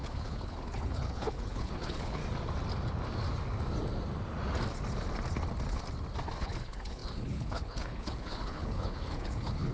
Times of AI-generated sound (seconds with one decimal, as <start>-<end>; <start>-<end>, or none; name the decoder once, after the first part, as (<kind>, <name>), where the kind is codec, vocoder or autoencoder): 0.0-2.2 (codec, HILCodec); 6.4-9.7